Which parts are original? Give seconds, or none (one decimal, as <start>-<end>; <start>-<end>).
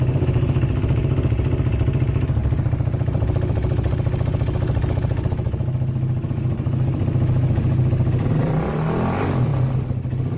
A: 0.0-10.4